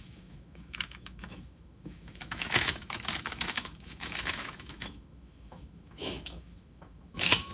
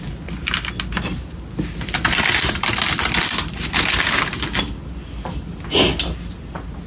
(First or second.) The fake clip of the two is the first